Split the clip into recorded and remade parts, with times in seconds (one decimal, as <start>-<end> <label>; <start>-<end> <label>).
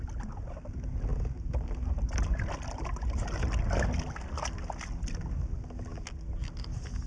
0.0-7.1 recorded